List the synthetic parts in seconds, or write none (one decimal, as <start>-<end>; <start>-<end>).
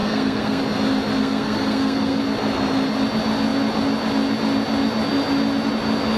0.0-0.6; 1.2-2.2